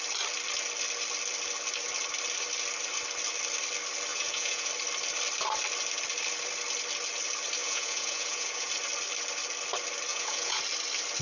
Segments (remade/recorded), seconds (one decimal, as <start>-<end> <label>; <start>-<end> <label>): 0.0-4.1 recorded; 4.1-4.7 remade; 4.7-7.6 recorded; 7.6-8.7 remade; 8.7-10.1 recorded; 10.1-10.6 remade; 10.6-11.2 recorded